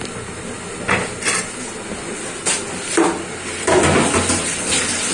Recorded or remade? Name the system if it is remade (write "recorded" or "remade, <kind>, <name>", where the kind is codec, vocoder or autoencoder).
recorded